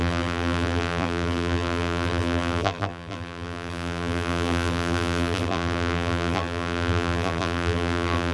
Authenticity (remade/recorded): remade